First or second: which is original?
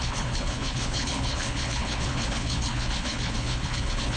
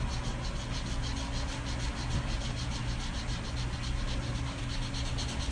second